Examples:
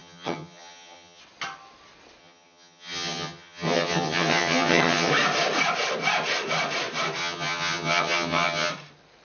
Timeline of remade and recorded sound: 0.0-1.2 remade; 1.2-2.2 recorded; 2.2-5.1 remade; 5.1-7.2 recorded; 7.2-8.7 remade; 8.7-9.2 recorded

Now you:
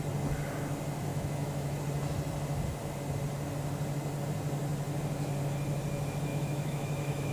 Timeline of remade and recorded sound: 0.0-1.1 recorded; 1.1-1.8 remade; 1.8-6.3 recorded; 6.3-7.3 remade

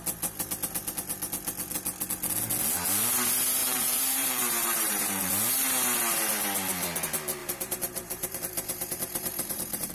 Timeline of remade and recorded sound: 0.0-3.6 recorded; 3.6-5.2 remade; 5.2-7.4 recorded; 7.4-9.9 remade

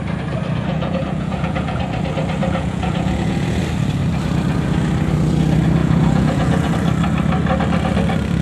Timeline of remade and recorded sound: 0.0-0.7 recorded; 0.7-1.8 remade; 1.8-2.4 recorded; 2.4-3.6 remade; 3.6-5.8 recorded; 5.8-6.7 remade; 6.7-8.4 recorded

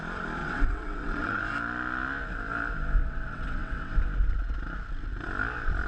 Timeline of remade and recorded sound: 0.0-0.4 recorded; 0.4-1.4 remade; 1.4-3.0 recorded; 3.0-3.9 remade; 3.9-5.9 recorded

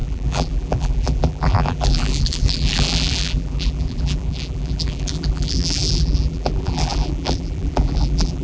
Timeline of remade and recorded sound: 0.0-8.4 remade